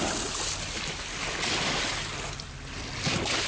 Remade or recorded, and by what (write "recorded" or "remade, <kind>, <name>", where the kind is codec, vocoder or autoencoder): recorded